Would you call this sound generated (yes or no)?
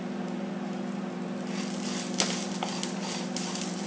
no